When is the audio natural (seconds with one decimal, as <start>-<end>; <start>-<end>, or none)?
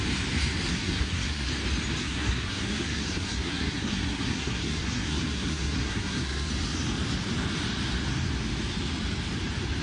0.0-0.7; 1.5-2.0; 6.5-9.8